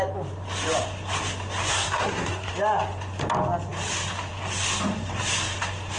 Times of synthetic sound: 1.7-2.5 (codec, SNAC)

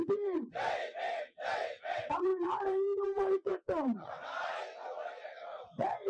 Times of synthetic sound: 0.0-6.1 (vocoder, WaveNeXt)

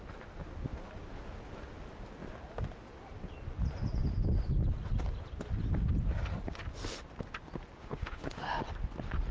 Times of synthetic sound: 7.8-8.6 (autoencoder, DAC-VAE)

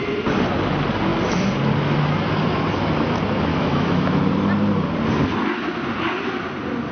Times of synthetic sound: 3.5-4.2 (autoencoder, DAC-VAE)

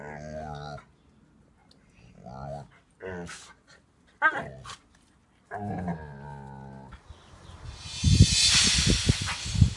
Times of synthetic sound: none

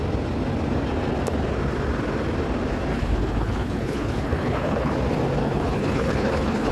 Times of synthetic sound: 2.9-4.9 (codec, HILCodec); 5.4-6.7

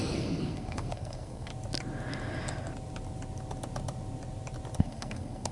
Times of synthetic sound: 0.0-1.5 (codec, SNAC); 4.8-5.5

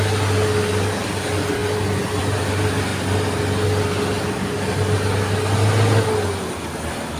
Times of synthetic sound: none